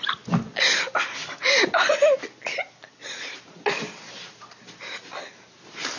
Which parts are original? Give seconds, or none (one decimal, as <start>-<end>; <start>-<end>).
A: 0.0-6.0